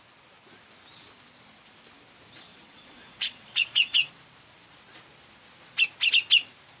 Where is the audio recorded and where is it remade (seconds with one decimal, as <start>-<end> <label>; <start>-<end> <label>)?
0.0-2.5 recorded; 2.5-4.1 remade; 4.1-6.8 recorded